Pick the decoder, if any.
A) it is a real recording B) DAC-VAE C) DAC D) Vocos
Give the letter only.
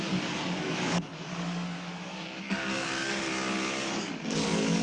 C